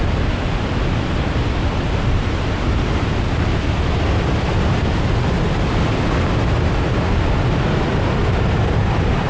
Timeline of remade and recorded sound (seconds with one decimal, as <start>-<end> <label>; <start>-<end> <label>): 0.0-8.2 recorded; 8.2-9.3 remade